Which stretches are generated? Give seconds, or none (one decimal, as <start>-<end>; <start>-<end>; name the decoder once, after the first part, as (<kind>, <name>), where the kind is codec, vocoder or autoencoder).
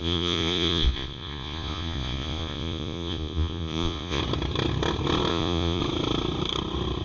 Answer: 0.0-4.2 (vocoder, Vocos); 5.3-5.8